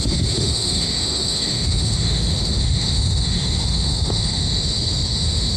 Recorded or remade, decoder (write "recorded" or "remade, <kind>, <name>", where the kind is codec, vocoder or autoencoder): remade, autoencoder, DAC-VAE